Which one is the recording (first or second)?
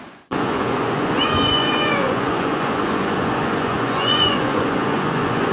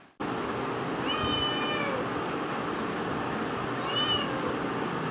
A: second